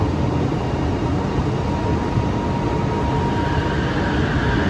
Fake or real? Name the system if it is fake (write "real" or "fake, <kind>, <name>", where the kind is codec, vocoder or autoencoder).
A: real